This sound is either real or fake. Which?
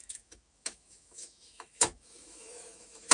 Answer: fake